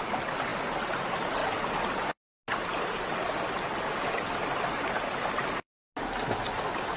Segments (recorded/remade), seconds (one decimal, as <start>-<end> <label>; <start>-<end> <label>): 0.0-7.0 recorded